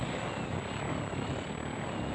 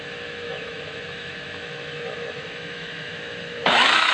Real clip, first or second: first